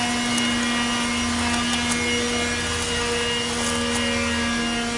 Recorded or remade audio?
recorded